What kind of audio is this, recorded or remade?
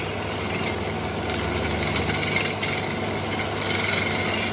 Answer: recorded